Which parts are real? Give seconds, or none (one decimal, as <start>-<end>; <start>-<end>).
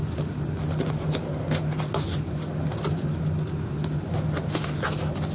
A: 0.0-5.3